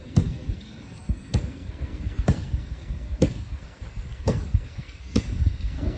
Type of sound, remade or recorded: remade